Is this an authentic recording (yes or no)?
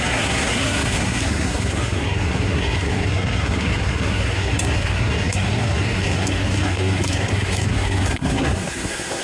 no